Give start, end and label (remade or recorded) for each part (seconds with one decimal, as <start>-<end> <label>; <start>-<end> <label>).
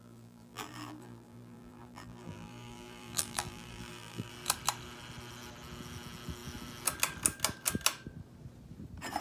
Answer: 0.0-4.3 remade; 4.3-9.2 recorded